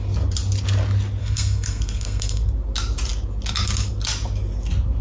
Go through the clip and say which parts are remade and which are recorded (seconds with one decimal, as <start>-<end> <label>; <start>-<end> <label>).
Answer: 0.0-1.2 recorded; 1.2-2.4 remade; 2.4-5.0 recorded